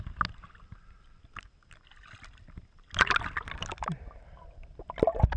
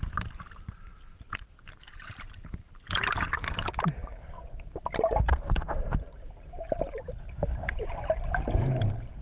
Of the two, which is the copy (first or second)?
second